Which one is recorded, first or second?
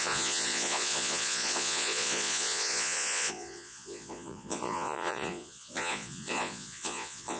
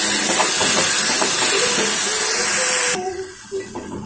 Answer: second